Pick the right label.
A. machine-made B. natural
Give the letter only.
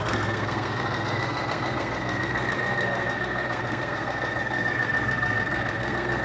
A